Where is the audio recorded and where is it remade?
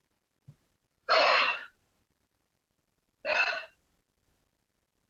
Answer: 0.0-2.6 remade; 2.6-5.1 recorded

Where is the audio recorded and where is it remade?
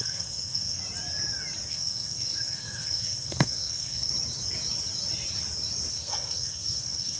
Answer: 0.0-0.8 remade; 0.8-1.7 recorded; 1.7-4.1 remade; 4.1-5.9 recorded; 5.9-7.2 remade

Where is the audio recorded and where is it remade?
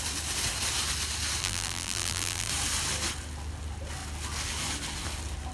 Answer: 0.0-1.4 recorded; 1.4-2.5 remade; 2.5-5.5 recorded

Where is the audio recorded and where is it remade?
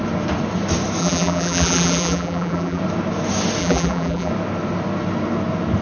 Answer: 0.0-1.0 recorded; 1.0-2.8 remade; 2.8-3.6 recorded; 3.6-4.3 remade; 4.3-5.8 recorded